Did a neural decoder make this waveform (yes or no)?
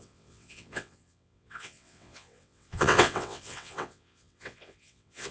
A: yes